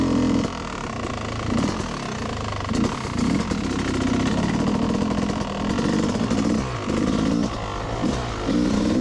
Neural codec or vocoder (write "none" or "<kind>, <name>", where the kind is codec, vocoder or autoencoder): none